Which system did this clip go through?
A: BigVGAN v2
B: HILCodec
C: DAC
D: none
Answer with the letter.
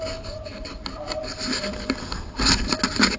D